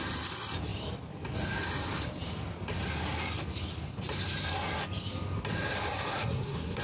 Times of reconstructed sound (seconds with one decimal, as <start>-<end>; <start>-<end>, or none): 6.1-6.8